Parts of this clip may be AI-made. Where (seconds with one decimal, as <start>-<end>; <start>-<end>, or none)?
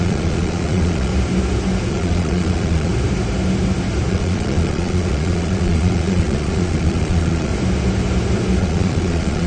0.0-1.1; 1.9-2.9; 4.1-7.5; 8.6-9.5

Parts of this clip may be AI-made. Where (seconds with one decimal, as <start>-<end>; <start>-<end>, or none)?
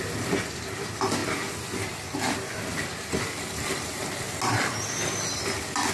none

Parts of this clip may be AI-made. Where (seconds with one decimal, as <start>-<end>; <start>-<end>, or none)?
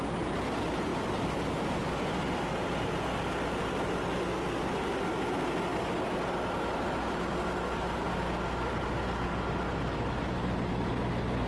none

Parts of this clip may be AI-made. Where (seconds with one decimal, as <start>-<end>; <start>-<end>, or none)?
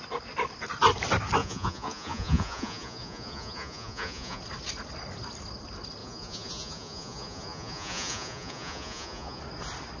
1.4-4.4; 6.0-9.4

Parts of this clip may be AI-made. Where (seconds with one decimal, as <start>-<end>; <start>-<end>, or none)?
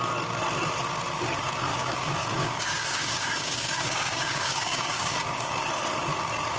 1.7-5.7